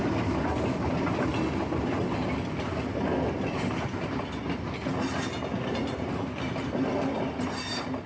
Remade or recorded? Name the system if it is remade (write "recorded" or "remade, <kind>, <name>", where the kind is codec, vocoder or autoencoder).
recorded